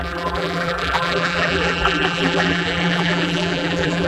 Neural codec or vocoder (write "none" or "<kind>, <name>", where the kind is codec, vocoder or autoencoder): vocoder, BigVGAN v2